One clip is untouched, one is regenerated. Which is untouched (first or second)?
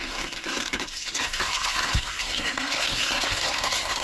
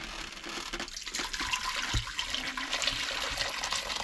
second